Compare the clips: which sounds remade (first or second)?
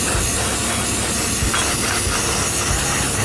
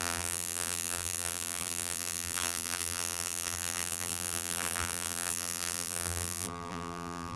second